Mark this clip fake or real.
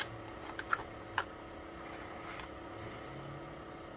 real